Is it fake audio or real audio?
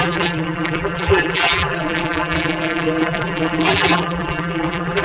fake